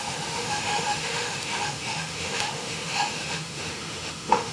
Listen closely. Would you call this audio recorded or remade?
remade